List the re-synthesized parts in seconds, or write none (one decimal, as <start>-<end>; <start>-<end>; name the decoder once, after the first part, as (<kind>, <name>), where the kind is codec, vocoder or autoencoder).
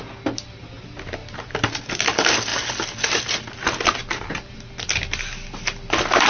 none